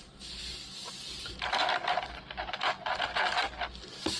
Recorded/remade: recorded